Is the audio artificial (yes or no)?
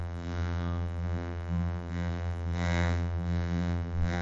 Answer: yes